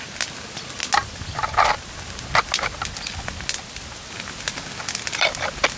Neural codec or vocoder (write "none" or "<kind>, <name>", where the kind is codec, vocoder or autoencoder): none